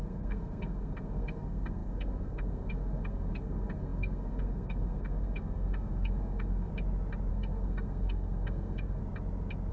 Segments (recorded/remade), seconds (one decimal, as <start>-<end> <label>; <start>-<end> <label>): 0.0-6.7 remade; 6.7-7.3 recorded; 7.3-9.0 remade; 9.0-9.7 recorded